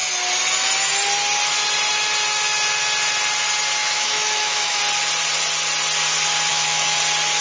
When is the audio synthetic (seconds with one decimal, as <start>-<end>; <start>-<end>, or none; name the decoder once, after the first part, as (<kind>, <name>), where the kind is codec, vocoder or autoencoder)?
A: 3.8-4.8 (autoencoder, DAC-VAE); 6.5-7.0